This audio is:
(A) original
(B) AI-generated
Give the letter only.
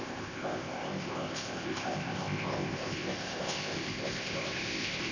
B